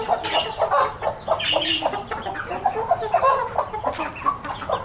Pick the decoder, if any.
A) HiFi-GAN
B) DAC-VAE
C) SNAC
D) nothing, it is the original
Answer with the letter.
D